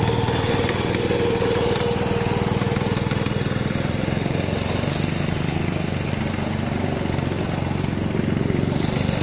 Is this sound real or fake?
real